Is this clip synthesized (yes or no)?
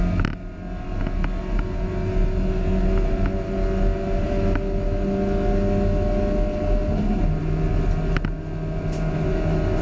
no